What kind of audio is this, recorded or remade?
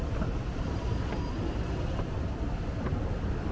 recorded